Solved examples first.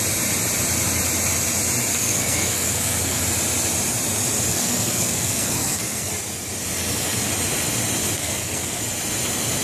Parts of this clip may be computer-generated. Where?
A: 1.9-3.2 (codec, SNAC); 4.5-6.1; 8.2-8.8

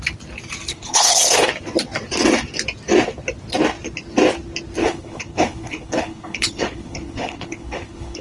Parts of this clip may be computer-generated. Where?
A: 0.7-1.5 (codec, HILCodec); 4.8-8.2

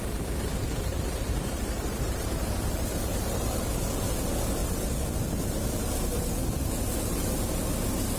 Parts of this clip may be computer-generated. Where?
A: 0.9-3.7 (vocoder, BigVGAN v2)

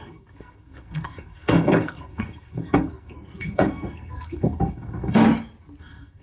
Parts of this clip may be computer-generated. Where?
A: 0.0-5.2 (codec, SNAC); 5.8-6.2

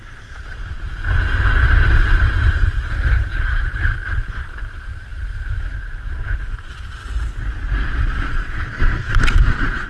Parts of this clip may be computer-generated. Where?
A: 0.0-7.0 (vocoder, BigVGAN v2); 7.8-9.9

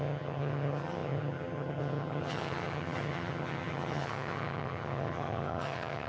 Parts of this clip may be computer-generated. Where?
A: 0.0-6.1 (vocoder, HiFi-GAN)